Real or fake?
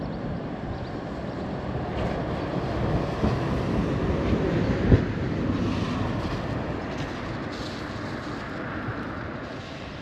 real